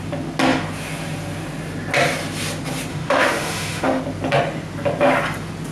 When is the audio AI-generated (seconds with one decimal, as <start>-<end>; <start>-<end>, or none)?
2.9-4.0